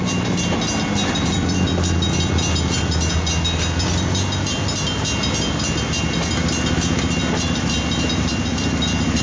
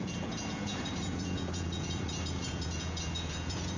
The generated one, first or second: second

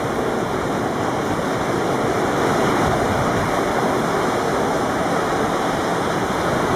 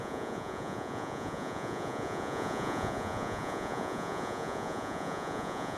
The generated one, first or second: second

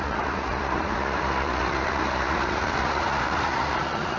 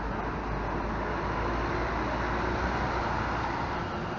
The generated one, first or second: first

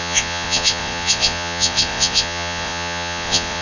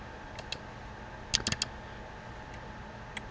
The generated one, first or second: first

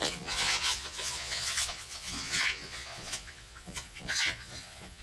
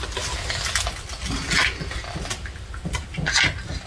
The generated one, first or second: first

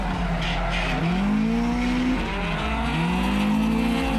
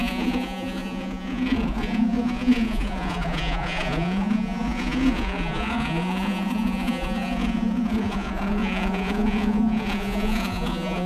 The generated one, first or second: second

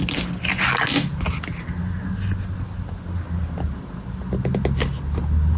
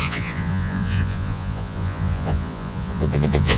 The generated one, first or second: second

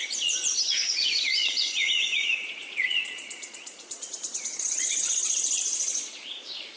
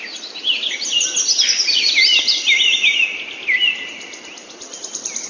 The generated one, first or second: first